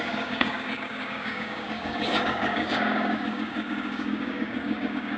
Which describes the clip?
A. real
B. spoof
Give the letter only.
B